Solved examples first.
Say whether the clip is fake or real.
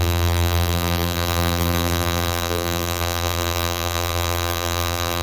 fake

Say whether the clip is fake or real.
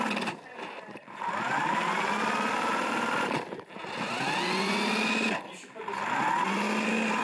real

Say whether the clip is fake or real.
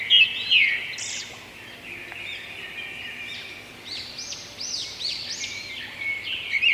real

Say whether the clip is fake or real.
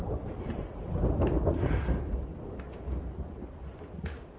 real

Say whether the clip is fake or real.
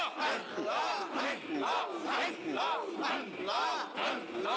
real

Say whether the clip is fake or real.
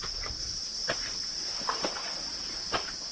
real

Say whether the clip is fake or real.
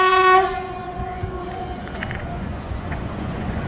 fake